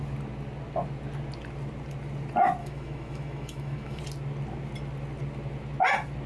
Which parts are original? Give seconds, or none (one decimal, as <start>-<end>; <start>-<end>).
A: 0.0-2.6; 4.0-6.3